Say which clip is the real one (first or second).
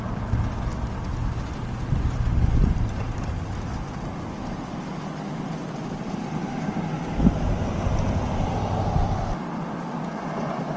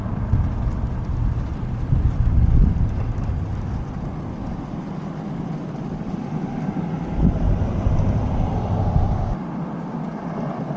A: first